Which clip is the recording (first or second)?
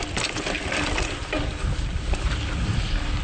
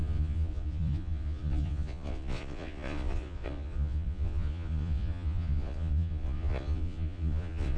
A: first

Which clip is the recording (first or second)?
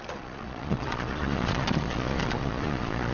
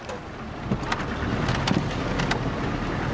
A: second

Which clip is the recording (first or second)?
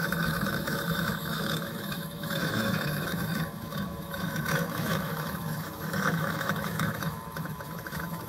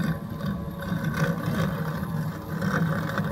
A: second